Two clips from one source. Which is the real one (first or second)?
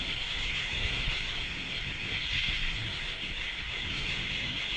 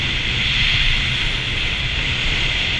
second